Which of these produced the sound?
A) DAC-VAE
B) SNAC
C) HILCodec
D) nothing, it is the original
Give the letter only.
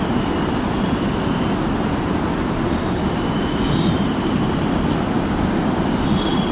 D